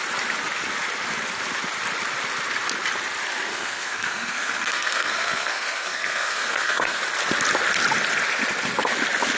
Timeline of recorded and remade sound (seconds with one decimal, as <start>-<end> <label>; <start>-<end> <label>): 0.0-3.5 recorded; 3.5-7.0 remade; 7.0-9.4 recorded

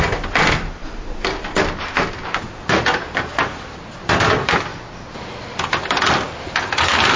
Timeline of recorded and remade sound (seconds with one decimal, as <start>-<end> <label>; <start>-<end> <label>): 0.0-7.2 recorded

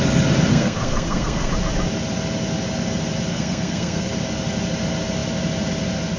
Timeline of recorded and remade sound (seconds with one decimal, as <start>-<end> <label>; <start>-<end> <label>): 0.0-0.5 recorded; 0.5-1.5 remade; 1.5-3.3 recorded; 3.3-4.1 remade; 4.1-6.2 recorded

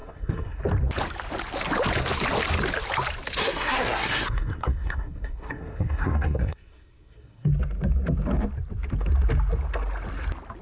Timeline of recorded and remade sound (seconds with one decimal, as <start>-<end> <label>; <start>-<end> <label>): 0.0-0.6 remade; 0.6-3.4 recorded; 3.4-7.5 remade; 7.5-10.6 recorded

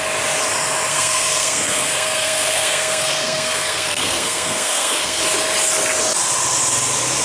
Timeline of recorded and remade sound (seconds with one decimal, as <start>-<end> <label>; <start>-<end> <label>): 0.0-0.9 recorded; 0.9-5.2 remade; 5.2-7.2 recorded

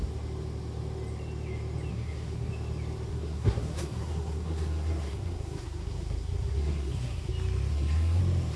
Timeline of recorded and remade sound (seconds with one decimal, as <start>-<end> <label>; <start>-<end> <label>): 0.0-1.9 recorded; 1.9-2.5 remade; 2.5-3.1 recorded; 3.1-7.3 remade; 7.3-7.7 recorded; 7.7-8.2 remade; 8.2-8.6 recorded

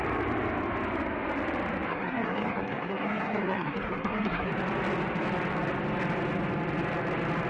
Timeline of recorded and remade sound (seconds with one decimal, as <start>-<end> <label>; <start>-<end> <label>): 0.0-1.9 recorded; 1.9-4.5 remade; 4.5-7.5 recorded

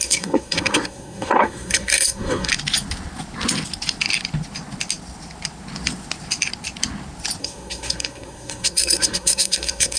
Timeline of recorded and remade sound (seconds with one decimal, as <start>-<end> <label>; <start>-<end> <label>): 0.0-2.5 remade; 2.5-7.4 recorded; 7.4-10.0 remade